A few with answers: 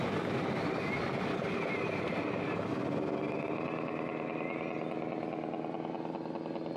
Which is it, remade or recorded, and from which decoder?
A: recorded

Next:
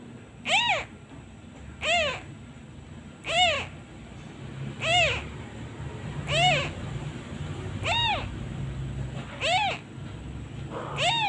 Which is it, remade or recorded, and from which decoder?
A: recorded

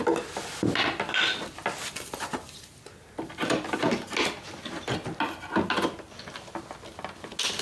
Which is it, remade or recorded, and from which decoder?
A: recorded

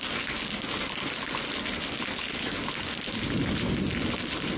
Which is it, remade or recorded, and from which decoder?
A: recorded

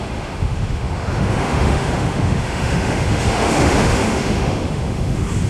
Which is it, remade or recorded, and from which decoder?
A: remade, autoencoder, DAC-VAE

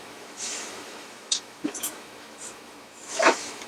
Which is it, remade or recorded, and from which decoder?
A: remade, autoencoder, DAC-VAE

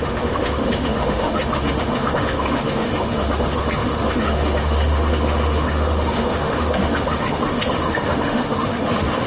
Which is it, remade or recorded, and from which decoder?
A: remade, autoencoder, DAC-VAE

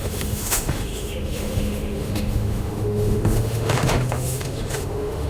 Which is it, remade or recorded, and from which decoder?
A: remade, autoencoder, DAC-VAE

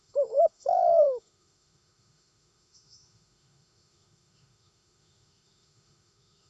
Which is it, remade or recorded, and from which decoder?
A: remade, autoencoder, DAC-VAE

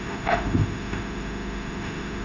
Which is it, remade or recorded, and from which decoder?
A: remade, autoencoder, DAC-VAE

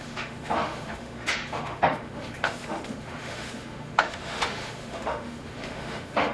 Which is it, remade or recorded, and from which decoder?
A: remade, autoencoder, DAC-VAE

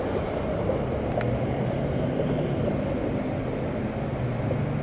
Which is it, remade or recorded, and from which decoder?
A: recorded